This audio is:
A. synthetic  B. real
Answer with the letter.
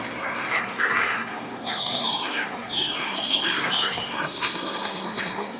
A